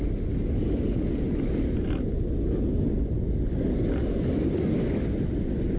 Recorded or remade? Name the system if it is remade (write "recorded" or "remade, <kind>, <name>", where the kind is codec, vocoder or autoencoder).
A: recorded